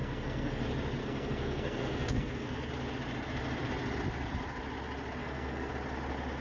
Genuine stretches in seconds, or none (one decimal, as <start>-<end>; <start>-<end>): 0.6-1.0; 2.7-5.2; 5.7-6.4